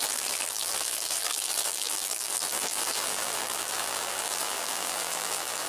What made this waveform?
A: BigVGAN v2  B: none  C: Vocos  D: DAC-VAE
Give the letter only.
A